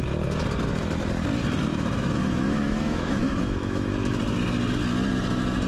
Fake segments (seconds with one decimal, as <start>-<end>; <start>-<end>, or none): 1.7-4.2